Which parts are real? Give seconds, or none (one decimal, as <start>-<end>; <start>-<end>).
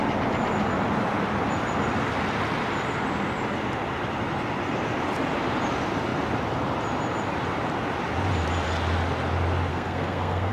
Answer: 0.0-9.7